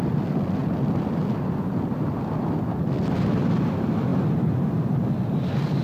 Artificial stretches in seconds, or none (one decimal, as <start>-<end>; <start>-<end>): none